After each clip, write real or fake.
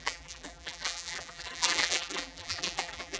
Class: fake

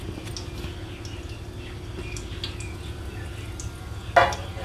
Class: real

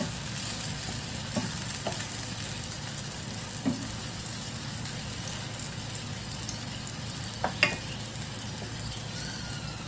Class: real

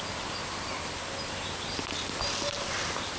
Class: real